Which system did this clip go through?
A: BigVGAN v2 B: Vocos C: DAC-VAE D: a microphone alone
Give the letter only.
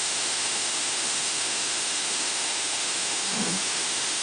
C